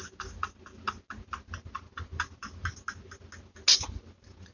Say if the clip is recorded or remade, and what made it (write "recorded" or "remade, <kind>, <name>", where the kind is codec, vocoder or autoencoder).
recorded